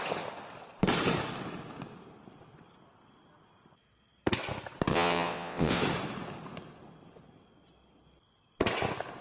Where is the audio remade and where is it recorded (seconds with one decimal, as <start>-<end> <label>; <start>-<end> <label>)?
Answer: 0.0-4.9 recorded; 4.9-5.8 remade; 5.8-9.2 recorded